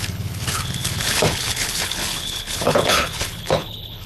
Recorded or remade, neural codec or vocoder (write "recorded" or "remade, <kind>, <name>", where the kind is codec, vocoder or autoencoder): remade, codec, HILCodec